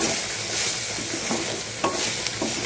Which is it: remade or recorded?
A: recorded